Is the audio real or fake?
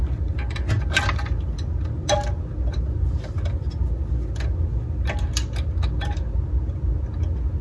real